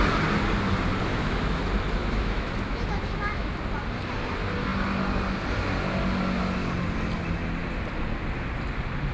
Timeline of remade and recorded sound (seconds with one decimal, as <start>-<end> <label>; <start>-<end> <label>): 0.0-1.1 recorded; 1.1-1.6 remade; 1.6-2.0 recorded; 2.0-3.5 remade; 3.5-9.1 recorded